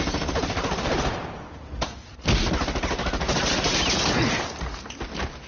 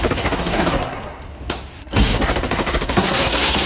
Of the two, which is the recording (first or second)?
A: first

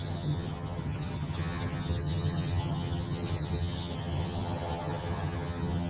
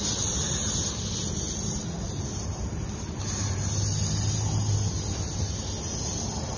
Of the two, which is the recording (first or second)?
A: second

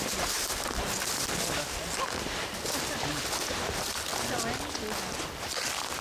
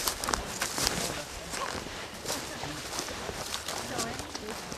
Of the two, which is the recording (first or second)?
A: first